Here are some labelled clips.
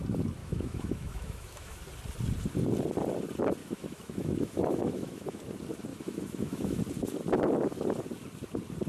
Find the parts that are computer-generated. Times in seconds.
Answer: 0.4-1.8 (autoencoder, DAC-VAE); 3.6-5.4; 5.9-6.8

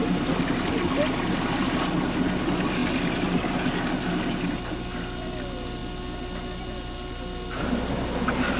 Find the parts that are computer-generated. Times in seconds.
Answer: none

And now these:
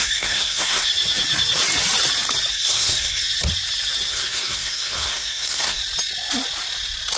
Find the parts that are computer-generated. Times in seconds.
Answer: 0.0-0.9 (codec, SNAC); 2.5-3.2; 4.1-5.8